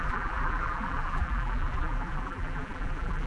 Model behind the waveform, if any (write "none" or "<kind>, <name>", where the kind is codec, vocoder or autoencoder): vocoder, BigVGAN v2